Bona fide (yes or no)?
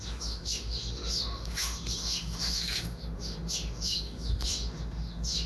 no